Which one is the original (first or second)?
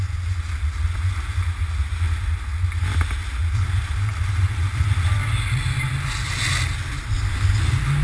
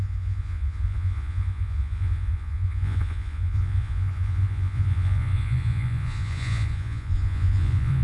first